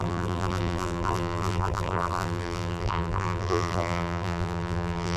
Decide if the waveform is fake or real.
fake